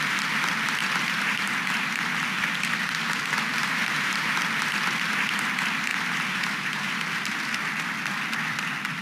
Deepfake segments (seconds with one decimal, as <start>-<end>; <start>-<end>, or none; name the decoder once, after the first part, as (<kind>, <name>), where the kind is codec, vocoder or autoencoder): 0.8-2.1 (vocoder, BigVGAN v2); 3.5-4.3; 5.9-7.1